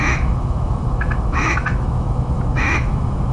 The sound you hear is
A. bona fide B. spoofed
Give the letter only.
B